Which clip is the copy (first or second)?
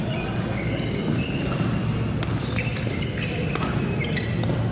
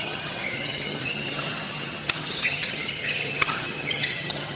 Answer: second